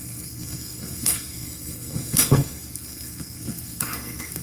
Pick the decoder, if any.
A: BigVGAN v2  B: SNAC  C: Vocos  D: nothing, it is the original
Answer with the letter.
B